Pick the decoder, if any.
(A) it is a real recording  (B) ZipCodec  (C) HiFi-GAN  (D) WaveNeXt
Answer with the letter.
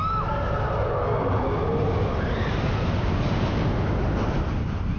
A